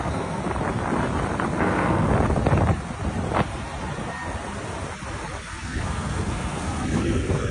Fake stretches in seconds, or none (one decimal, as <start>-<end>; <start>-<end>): 0.0-0.4; 1.6-2.1; 5.4-7.5